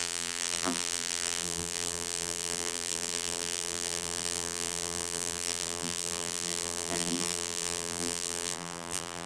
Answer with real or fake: fake